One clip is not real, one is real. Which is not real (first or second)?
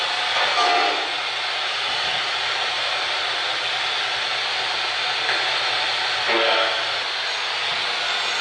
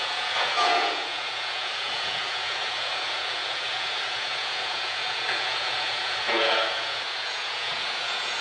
second